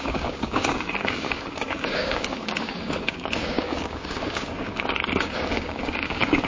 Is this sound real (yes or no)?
no